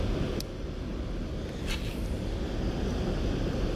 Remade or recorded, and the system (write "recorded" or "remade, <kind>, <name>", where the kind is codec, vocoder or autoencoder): recorded